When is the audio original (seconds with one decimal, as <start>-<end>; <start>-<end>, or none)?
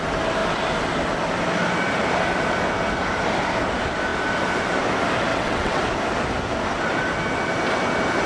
0.0-5.3; 5.8-8.3